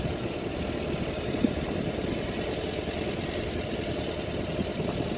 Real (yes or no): no